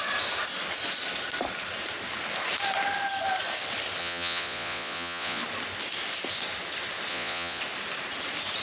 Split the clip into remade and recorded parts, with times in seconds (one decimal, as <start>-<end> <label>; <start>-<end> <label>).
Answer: 0.0-4.0 recorded; 4.0-5.4 remade; 5.4-7.1 recorded; 7.1-7.6 remade; 7.6-8.6 recorded